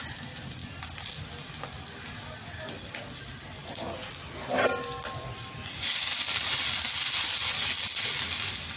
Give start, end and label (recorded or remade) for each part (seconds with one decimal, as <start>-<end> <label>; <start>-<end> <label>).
0.0-8.8 recorded